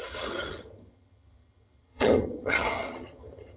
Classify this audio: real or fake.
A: fake